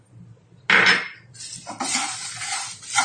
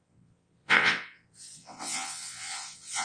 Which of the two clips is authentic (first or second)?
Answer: first